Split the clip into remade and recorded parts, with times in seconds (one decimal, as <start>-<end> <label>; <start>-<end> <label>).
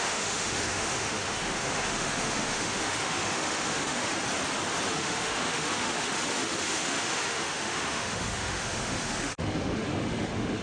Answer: 0.0-4.1 remade; 4.1-4.9 recorded; 4.9-10.6 remade